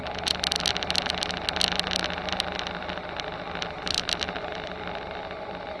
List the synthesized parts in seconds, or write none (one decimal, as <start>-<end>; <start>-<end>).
none